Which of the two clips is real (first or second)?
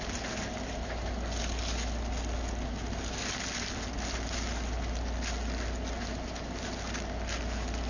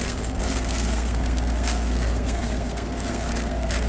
first